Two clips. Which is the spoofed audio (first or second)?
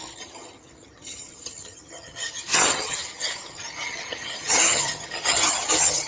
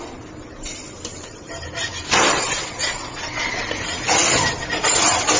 first